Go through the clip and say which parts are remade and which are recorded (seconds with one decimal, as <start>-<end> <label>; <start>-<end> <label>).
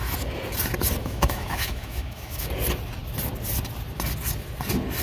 0.0-1.0 recorded; 1.0-2.5 remade; 2.5-5.0 recorded